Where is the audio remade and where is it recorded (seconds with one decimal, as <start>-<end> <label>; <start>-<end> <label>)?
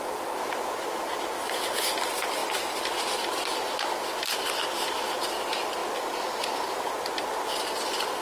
0.0-8.2 recorded